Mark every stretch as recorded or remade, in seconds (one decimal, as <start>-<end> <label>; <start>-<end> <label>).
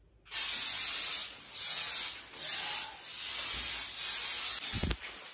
0.0-5.3 recorded